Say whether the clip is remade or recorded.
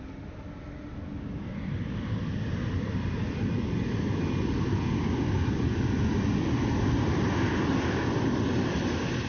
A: recorded